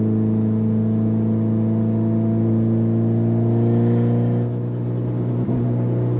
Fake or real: real